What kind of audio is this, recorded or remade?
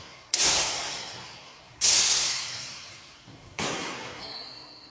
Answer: remade